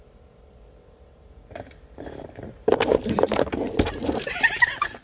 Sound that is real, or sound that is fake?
fake